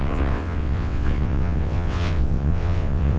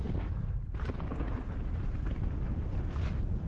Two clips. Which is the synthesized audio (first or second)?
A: first